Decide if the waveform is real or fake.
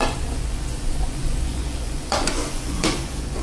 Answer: fake